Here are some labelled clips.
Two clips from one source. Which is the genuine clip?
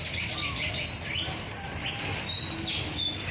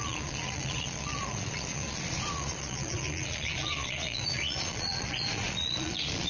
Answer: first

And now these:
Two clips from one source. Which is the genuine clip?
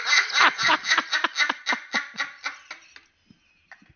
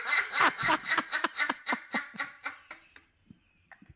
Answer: first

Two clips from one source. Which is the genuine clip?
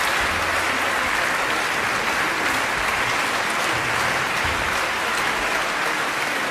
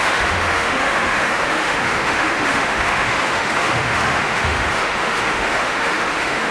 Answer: first